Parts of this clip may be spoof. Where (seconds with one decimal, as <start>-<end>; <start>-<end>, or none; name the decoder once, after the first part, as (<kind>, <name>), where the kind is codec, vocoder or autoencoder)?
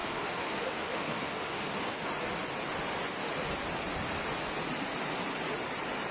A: 0.0-1.7 (autoencoder, DAC-VAE)